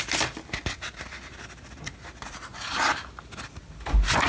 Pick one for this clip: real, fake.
real